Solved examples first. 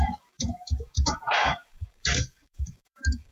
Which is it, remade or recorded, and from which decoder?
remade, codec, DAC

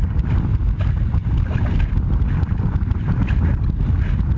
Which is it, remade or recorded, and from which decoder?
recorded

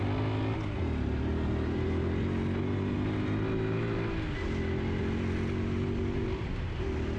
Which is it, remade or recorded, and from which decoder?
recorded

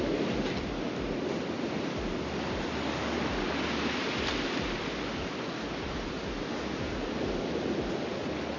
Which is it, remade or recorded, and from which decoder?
recorded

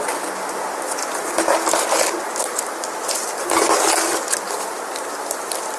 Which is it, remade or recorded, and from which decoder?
recorded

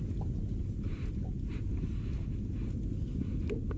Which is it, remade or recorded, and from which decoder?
recorded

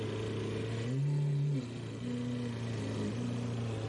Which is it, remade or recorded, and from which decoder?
recorded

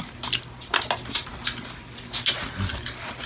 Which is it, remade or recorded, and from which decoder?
recorded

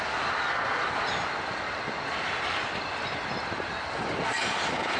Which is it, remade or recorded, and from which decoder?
recorded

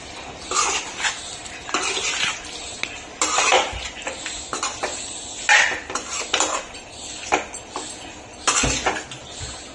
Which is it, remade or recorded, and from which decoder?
recorded